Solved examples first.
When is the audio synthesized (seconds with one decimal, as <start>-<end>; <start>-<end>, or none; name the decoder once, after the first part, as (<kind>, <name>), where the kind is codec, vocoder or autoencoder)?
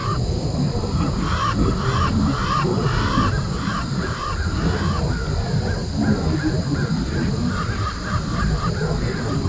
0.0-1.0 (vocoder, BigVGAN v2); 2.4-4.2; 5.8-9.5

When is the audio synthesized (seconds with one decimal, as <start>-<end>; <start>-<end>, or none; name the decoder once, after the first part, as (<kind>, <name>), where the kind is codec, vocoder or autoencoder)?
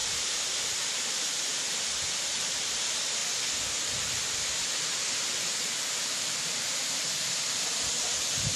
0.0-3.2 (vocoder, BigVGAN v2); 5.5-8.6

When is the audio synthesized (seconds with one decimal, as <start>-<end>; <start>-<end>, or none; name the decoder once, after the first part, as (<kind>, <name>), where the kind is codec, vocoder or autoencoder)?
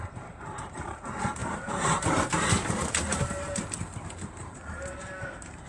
0.0-5.7 (vocoder, BigVGAN v2)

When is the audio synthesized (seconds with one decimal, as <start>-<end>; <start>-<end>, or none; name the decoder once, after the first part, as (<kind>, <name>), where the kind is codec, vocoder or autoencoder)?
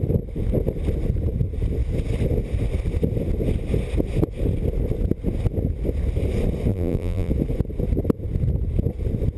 6.7-7.3 (vocoder, BigVGAN v2)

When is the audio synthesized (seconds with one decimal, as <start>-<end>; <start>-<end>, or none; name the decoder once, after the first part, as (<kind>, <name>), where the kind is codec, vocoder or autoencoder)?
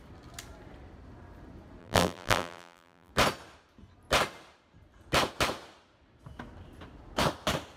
1.8-3.1 (vocoder, BigVGAN v2)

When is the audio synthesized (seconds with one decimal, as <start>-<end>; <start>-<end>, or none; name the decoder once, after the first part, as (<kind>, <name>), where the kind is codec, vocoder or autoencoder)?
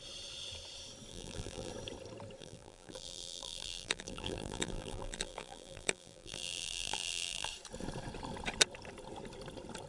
1.1-1.7 (vocoder, BigVGAN v2); 2.4-7.5